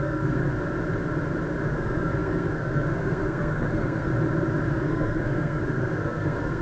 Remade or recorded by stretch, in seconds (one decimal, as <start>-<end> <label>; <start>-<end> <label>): 0.0-0.4 remade; 0.4-1.7 recorded; 1.7-4.1 remade; 4.1-4.7 recorded; 4.7-6.6 remade

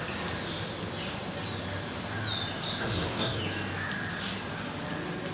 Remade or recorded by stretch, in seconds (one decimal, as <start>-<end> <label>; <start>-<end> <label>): 0.0-2.8 recorded; 2.8-3.4 remade; 3.4-5.3 recorded

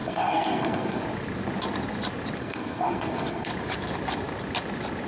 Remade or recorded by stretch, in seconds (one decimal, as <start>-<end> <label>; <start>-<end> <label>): 0.0-1.0 remade; 1.0-2.4 recorded; 2.4-3.5 remade; 3.5-5.1 recorded

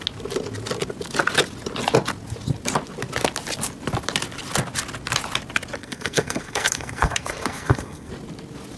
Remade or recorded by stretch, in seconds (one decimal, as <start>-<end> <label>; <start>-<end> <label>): 0.0-5.8 recorded; 5.8-8.1 remade; 8.1-8.8 recorded